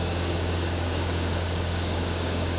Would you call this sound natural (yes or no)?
no